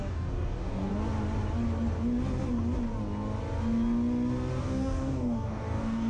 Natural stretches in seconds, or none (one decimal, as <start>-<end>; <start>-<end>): 0.9-4.6